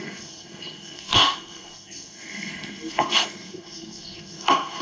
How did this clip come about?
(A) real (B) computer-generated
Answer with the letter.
B